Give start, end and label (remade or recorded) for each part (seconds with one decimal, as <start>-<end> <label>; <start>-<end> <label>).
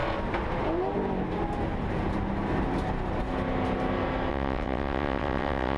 0.0-4.3 recorded; 4.3-5.8 remade